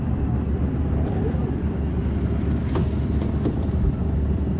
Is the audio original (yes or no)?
no